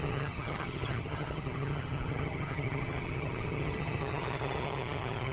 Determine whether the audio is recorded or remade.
remade